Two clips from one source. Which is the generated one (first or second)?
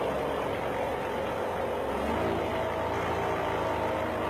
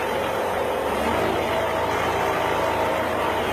second